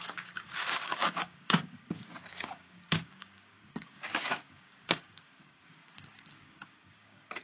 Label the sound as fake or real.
fake